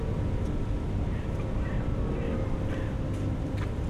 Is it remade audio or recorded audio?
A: recorded